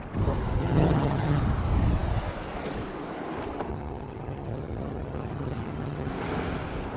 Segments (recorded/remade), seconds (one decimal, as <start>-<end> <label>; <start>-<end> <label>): 0.0-0.6 recorded; 0.6-1.4 remade; 1.4-3.7 recorded; 3.7-6.1 remade; 6.1-7.0 recorded